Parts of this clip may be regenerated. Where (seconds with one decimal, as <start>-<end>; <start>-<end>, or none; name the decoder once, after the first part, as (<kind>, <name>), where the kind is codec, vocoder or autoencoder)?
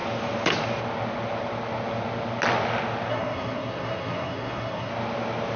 3.1-4.9 (codec, SNAC)